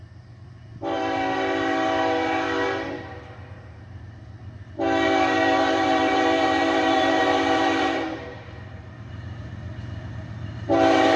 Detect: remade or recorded remade